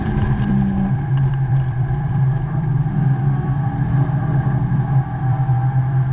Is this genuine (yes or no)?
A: no